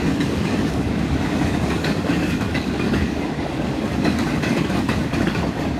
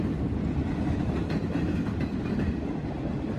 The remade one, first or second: first